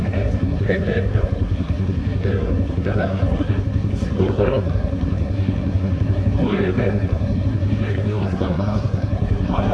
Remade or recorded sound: remade